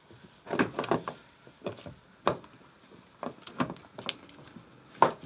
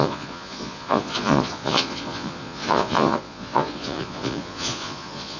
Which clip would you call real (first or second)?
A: first